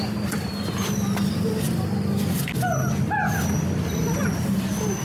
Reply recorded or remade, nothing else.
recorded